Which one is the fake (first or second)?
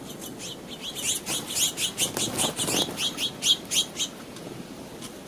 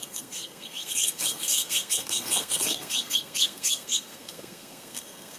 second